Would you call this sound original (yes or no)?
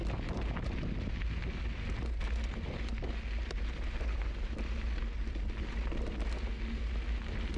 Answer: yes